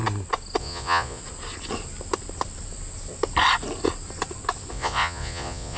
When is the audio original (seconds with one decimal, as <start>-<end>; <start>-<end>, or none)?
0.0-0.6; 1.2-4.7